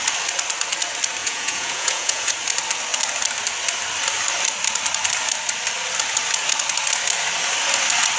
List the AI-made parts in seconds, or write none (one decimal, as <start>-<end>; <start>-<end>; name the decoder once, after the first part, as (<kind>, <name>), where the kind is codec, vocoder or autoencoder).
1.2-2.3 (vocoder, Vocos)